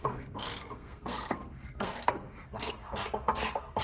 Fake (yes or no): yes